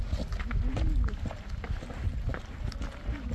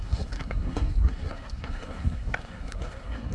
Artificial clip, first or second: second